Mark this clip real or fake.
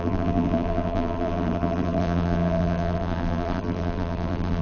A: fake